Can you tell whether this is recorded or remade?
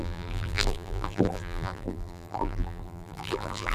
remade